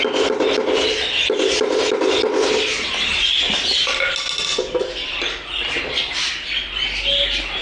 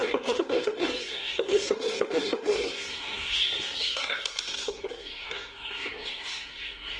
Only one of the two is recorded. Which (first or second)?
first